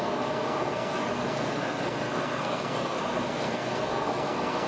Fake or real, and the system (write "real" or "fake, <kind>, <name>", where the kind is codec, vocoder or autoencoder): fake, codec, SNAC